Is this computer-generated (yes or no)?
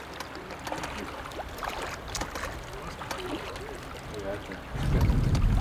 no